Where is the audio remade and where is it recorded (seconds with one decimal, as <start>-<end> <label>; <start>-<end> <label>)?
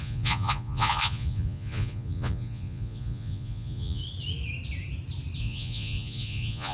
0.0-4.0 remade; 4.0-5.4 recorded; 5.4-6.7 remade